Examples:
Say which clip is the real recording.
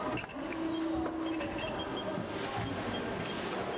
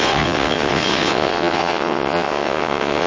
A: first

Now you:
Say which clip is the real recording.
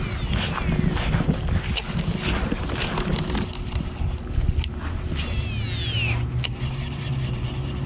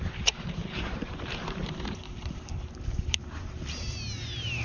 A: first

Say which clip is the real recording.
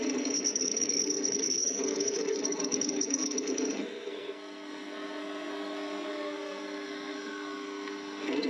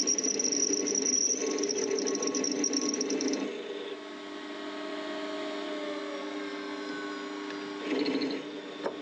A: second